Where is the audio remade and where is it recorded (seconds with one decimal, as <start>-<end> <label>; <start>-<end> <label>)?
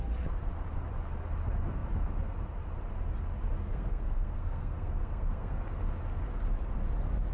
0.0-3.6 recorded; 3.6-5.6 remade; 5.6-7.3 recorded